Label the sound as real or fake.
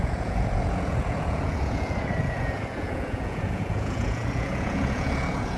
fake